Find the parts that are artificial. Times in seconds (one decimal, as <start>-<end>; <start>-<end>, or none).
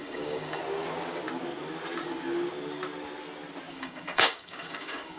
0.0-0.6; 3.7-5.2